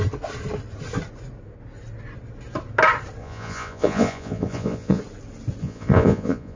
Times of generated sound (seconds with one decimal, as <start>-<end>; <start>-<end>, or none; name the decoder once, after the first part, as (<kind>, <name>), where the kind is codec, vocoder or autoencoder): 3.2-5.0 (vocoder, Vocos); 5.6-6.6